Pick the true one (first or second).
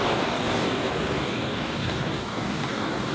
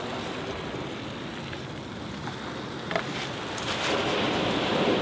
second